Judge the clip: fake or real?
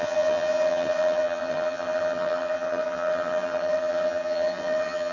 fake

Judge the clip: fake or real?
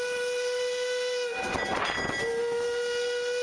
real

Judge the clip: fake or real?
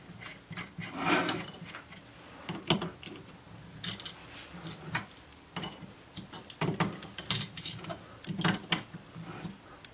real